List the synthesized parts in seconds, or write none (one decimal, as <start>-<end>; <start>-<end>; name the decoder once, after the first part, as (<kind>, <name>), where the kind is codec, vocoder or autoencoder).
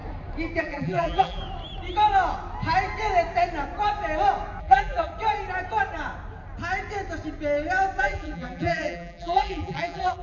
0.6-1.4 (vocoder, BigVGAN v2); 4.6-5.1; 8.0-10.2